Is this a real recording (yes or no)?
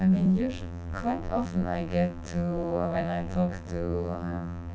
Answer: no